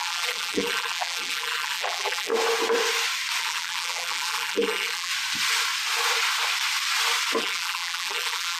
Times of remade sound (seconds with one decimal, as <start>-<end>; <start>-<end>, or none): 0.0-2.3; 3.4-5.1; 7.4-8.6